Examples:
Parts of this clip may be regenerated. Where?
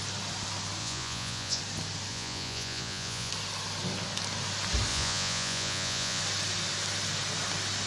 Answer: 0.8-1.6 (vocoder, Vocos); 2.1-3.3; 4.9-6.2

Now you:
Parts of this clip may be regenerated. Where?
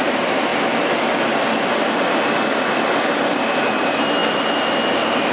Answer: none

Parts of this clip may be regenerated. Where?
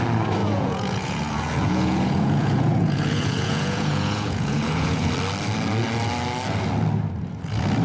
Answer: 0.4-5.1 (vocoder, Vocos)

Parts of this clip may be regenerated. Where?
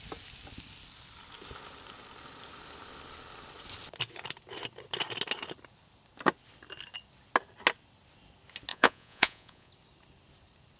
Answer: 8.7-9.7 (vocoder, Vocos)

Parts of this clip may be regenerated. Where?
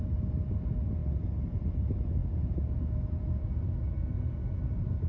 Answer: 2.2-3.6 (vocoder, Vocos)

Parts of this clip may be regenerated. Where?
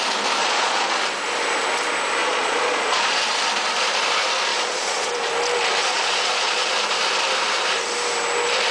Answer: 0.4-1.0 (vocoder, Vocos); 2.2-3.2; 4.5-5.1; 5.8-6.7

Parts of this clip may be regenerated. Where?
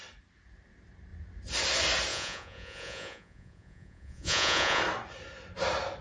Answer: 2.1-4.8 (vocoder, Vocos)